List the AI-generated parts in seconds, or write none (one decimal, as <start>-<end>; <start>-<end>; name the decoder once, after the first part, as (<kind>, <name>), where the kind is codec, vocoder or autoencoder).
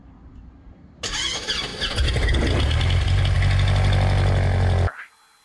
none